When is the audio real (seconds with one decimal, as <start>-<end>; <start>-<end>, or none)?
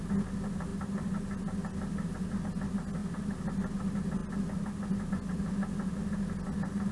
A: 0.0-6.9